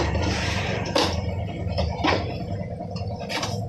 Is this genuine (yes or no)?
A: no